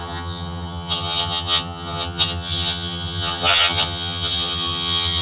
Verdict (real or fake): fake